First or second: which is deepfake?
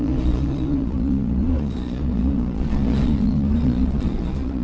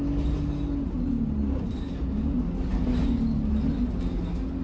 first